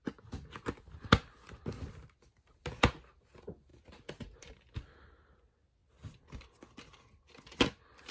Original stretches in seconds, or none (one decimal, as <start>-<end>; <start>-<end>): 0.0-8.1